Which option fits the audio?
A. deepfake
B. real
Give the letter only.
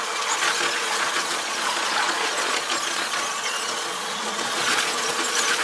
A